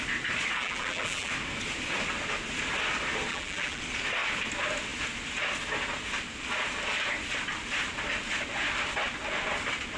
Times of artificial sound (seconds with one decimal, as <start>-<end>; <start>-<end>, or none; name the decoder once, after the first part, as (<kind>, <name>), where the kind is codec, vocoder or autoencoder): 0.6-1.3 (vocoder, BigVGAN v2); 3.3-3.8